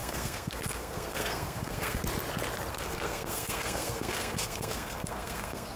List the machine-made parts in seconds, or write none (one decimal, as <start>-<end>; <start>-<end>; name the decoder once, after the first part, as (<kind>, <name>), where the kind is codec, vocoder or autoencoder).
0.0-2.0 (codec, SNAC); 2.7-5.8